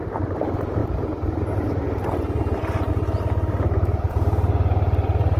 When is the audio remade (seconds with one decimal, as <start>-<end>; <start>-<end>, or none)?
0.0-5.4